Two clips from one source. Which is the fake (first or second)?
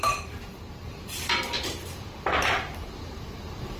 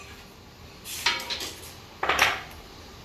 first